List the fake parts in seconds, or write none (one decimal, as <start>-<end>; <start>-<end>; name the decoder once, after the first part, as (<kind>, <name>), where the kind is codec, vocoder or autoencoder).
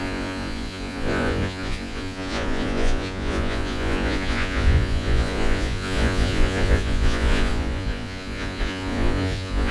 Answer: 0.0-9.7 (vocoder, Vocos)